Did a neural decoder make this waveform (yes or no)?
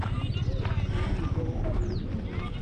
no